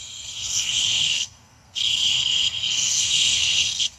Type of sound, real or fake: fake